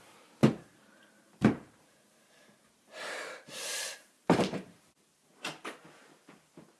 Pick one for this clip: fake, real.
fake